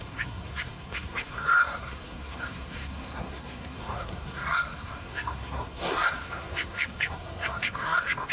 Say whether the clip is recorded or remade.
remade